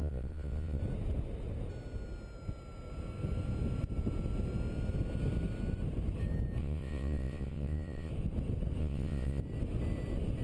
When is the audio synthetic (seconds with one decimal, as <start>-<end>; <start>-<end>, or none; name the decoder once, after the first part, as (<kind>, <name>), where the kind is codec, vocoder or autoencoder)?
0.0-0.8 (vocoder, Vocos); 6.6-8.1; 8.8-9.4